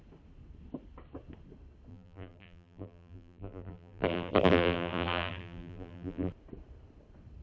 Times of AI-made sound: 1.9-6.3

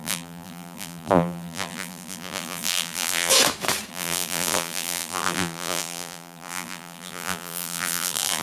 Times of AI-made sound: 0.0-3.3; 3.9-8.4